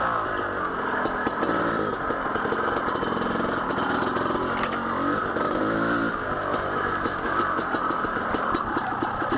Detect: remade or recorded recorded